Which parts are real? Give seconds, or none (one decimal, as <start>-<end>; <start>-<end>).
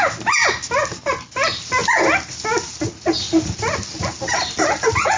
0.0-5.2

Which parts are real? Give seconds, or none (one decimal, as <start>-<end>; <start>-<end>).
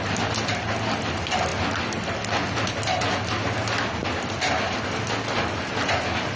0.0-6.4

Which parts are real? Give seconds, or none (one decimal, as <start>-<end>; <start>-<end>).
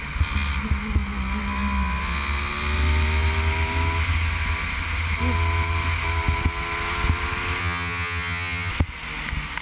0.0-7.6; 8.7-9.6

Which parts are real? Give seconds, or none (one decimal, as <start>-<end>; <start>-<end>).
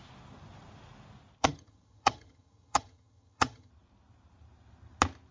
0.0-1.4; 3.7-5.3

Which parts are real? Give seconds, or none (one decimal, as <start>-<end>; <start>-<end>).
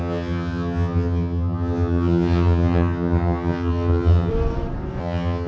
4.3-5.0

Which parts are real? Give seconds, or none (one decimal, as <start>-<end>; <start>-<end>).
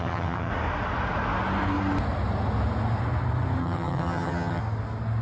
0.5-3.6; 4.6-5.2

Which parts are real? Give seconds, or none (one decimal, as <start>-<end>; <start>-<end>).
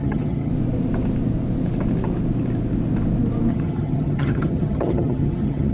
0.5-3.5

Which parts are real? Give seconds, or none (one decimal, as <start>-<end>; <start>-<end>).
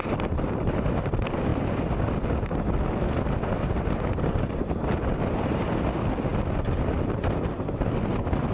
0.0-8.5